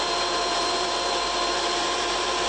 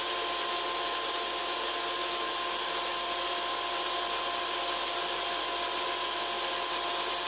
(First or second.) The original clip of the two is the second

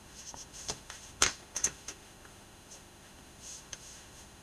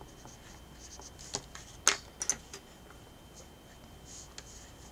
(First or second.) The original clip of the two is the second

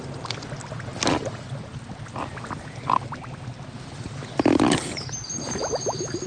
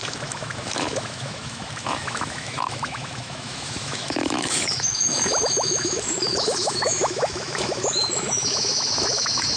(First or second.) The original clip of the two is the first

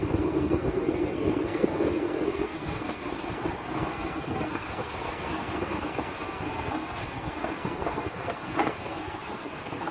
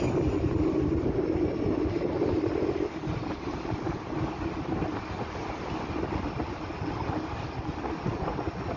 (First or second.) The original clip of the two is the second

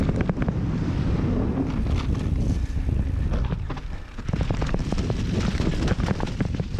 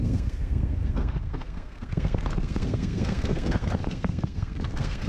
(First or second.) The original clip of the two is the first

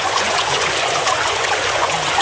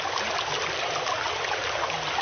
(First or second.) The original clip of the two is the second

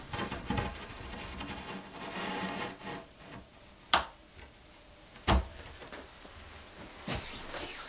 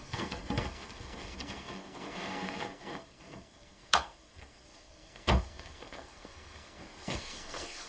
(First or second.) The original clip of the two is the first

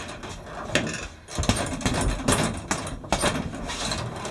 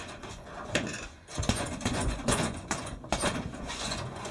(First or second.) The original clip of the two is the first